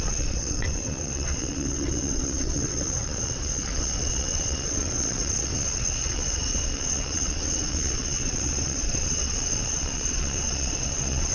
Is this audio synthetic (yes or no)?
yes